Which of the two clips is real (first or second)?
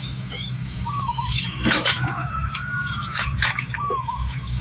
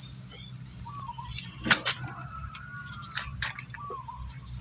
second